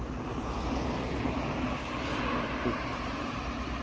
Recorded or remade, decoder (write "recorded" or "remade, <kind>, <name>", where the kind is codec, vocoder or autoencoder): remade, vocoder, BigVGAN v2